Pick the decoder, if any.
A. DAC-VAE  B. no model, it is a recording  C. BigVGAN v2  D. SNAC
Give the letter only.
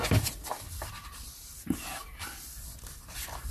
B